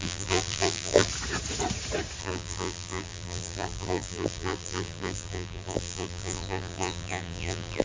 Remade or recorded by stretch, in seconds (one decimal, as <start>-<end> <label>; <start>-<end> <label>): 0.0-1.1 remade; 1.1-2.2 recorded; 2.2-7.8 remade